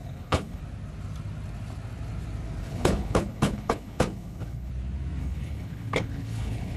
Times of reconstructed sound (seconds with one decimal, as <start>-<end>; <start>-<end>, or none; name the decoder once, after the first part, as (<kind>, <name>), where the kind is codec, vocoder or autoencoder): 0.0-0.6 (codec, HILCodec); 2.6-4.7; 5.2-6.8

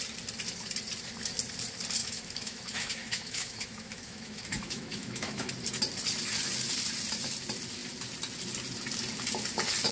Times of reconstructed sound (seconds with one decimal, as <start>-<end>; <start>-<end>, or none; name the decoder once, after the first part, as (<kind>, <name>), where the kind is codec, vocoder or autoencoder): 2.0-5.5 (autoencoder, DAC-VAE)